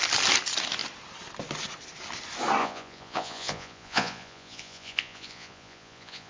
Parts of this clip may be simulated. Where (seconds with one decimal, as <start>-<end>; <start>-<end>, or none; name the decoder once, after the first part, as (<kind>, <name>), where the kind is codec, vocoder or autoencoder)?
2.6-6.3 (vocoder, Vocos)